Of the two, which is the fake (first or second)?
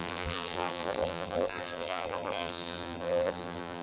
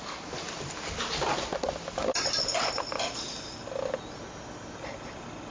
first